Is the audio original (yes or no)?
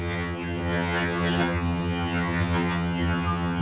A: no